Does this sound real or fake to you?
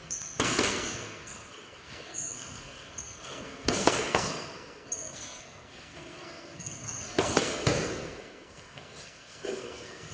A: fake